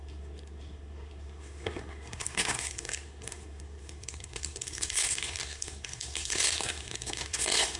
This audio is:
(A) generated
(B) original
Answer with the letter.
A